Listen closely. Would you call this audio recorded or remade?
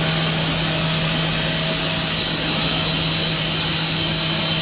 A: recorded